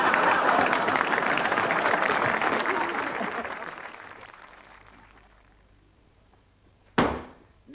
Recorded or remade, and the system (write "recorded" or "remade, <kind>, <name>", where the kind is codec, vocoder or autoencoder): remade, vocoder, BigVGAN v2